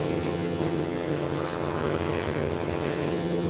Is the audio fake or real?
fake